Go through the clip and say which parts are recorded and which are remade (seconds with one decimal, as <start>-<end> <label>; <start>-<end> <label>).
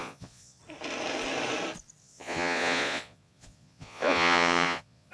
0.0-0.6 remade; 0.6-2.0 recorded; 2.0-5.1 remade